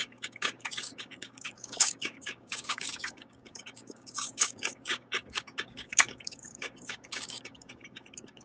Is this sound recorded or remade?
remade